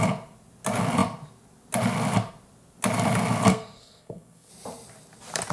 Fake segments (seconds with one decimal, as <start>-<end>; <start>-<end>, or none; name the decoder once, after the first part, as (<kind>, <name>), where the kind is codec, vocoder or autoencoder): 3.5-4.5 (codec, SNAC)